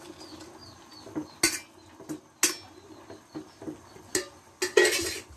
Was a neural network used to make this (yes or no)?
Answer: no